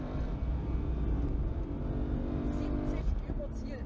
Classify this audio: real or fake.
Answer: real